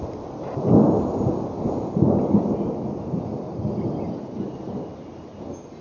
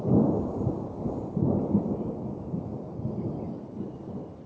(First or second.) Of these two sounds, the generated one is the second